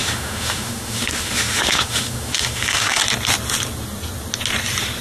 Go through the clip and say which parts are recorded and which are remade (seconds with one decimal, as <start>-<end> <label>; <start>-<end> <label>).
0.0-3.0 remade; 3.0-5.0 recorded